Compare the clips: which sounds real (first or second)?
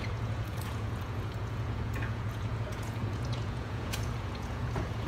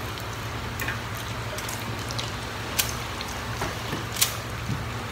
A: second